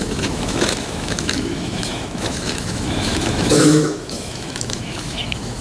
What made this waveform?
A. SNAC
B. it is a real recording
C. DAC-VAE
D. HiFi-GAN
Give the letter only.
C